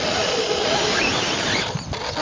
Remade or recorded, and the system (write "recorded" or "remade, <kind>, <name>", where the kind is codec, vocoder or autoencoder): recorded